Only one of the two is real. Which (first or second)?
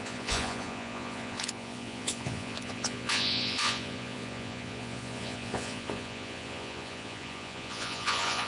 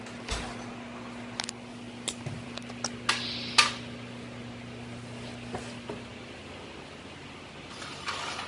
second